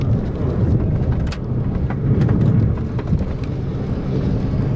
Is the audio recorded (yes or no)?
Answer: yes